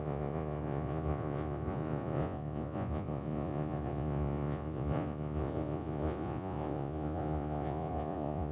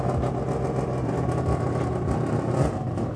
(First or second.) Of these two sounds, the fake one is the first